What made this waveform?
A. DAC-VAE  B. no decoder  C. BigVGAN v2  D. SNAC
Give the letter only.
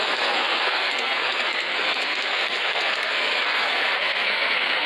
D